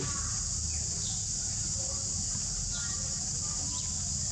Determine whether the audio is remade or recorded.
recorded